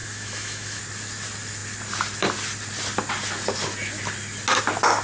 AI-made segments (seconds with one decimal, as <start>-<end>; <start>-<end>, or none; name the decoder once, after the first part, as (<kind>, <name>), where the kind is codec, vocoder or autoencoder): 0.0-0.8 (autoencoder, DAC-VAE)